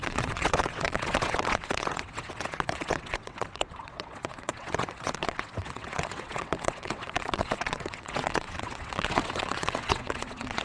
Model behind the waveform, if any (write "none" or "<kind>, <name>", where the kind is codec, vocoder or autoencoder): vocoder, WaveNeXt